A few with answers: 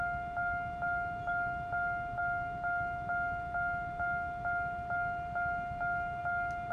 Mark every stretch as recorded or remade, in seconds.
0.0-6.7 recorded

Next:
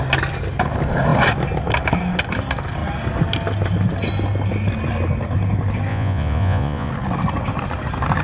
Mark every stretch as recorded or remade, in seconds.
0.0-5.9 recorded; 5.9-6.9 remade; 6.9-8.2 recorded